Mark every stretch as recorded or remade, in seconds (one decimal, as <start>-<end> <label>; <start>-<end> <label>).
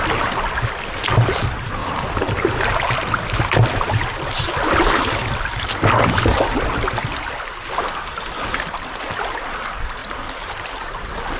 0.0-1.8 recorded; 1.8-2.6 remade; 2.6-10.0 recorded; 10.0-10.6 remade; 10.6-11.4 recorded